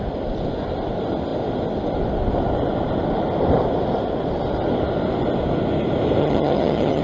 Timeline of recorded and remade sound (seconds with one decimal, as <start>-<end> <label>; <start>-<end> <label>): 0.0-6.2 recorded; 6.2-7.0 remade